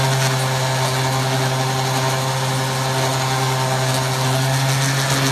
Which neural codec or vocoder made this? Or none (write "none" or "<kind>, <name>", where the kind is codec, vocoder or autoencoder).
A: none